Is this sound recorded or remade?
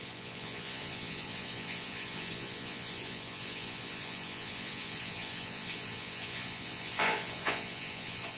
remade